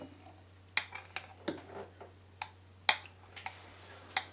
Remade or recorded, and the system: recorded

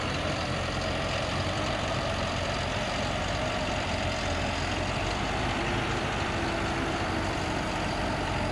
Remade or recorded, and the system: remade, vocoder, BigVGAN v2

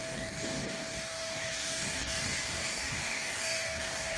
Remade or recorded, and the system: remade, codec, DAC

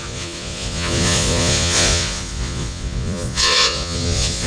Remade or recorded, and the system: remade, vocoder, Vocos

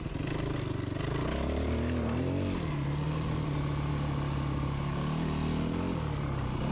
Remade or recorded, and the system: recorded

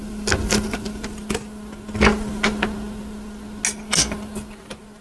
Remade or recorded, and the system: recorded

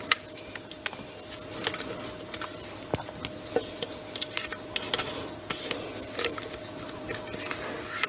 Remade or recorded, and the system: recorded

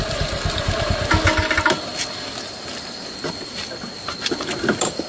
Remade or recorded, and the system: recorded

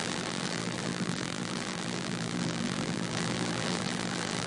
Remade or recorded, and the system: remade, vocoder, BigVGAN v2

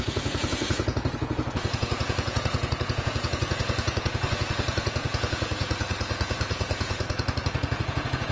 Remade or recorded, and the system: remade, vocoder, Vocos